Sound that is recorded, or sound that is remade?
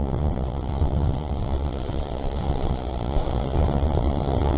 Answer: remade